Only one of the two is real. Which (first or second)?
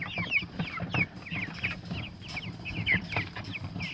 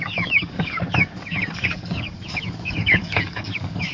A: first